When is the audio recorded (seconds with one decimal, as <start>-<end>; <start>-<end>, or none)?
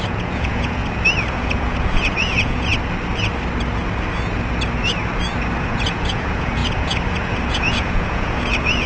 0.8-1.3; 2.7-5.6